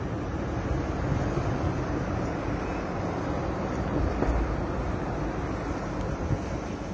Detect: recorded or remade recorded